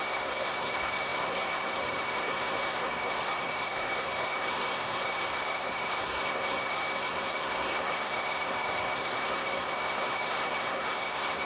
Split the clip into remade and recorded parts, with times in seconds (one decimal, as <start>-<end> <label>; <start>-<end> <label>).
0.0-11.5 remade